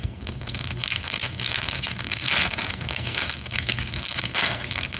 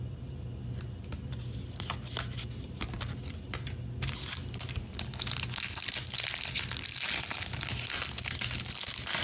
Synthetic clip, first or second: first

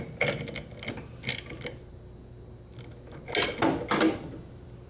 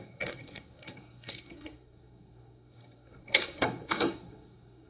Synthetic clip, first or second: second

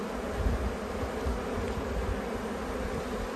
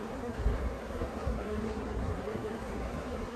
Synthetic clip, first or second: second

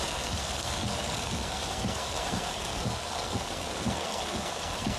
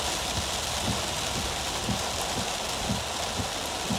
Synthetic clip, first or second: first